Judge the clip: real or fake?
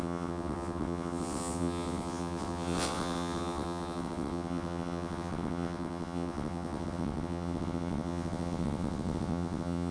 fake